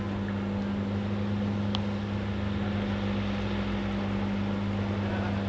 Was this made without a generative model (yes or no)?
yes